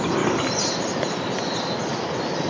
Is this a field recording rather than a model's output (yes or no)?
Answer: yes